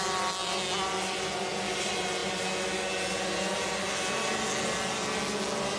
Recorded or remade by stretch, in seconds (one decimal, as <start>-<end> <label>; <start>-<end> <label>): 0.0-5.8 recorded